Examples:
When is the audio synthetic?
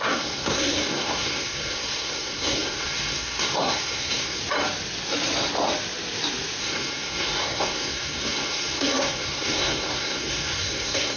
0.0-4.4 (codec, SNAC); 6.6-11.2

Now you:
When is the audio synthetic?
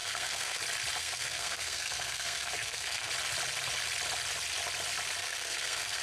0.0-0.6 (codec, SNAC); 1.0-3.1; 5.2-6.0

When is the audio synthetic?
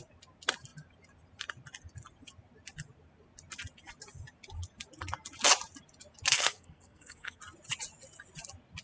6.3-7.4 (codec, SNAC)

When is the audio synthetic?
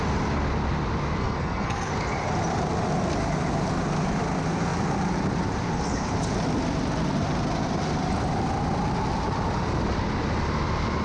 1.2-1.9 (codec, SNAC)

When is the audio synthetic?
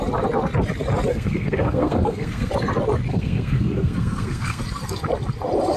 1.1-2.5 (codec, SNAC); 3.1-4.6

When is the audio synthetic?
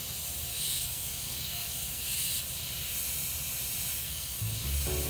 0.5-2.3 (codec, SNAC); 4.0-4.5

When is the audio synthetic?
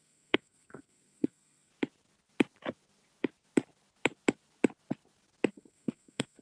0.0-1.7 (codec, SNAC); 5.5-6.4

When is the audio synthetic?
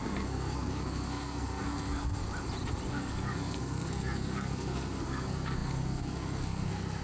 0.0-2.2 (codec, SNAC); 2.9-7.0